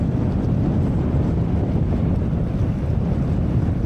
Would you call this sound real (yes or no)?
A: yes